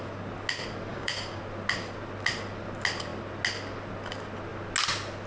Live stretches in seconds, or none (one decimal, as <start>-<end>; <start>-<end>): 0.0-0.9; 1.4-5.3